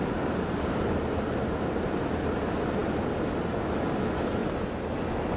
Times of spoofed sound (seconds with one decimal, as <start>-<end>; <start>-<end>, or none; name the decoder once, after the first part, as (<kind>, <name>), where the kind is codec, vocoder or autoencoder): none